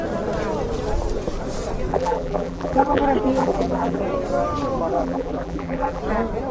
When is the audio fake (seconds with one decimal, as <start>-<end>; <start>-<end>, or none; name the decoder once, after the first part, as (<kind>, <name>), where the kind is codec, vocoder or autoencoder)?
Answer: 1.9-3.0 (vocoder, BigVGAN v2); 3.4-4.0; 4.9-6.0